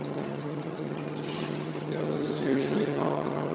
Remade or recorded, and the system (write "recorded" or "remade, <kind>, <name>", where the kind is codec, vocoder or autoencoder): remade, vocoder, HiFi-GAN